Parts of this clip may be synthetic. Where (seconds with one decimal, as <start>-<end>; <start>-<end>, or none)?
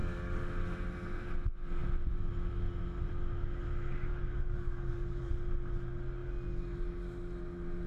0.0-0.5; 4.1-5.3